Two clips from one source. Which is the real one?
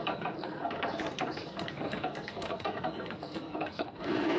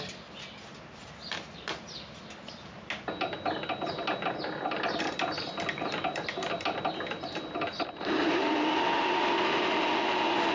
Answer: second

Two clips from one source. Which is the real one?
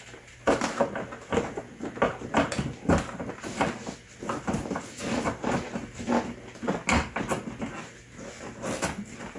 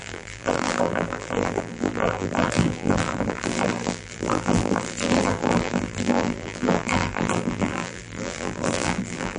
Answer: first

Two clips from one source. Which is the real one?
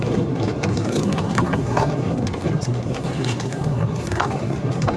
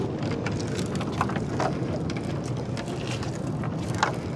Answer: second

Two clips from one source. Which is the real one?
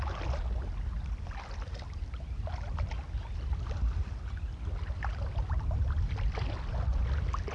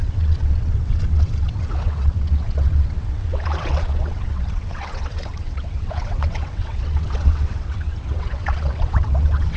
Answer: first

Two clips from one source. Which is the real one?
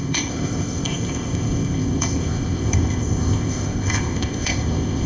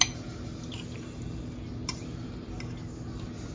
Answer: second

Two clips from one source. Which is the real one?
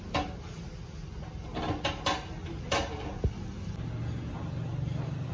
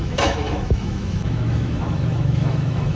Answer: first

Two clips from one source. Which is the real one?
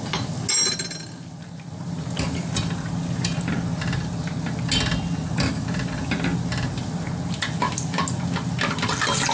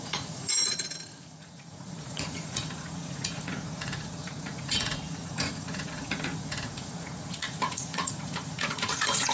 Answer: first